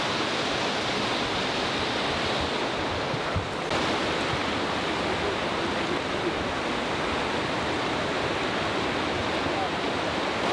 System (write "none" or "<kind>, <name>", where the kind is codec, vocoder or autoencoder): none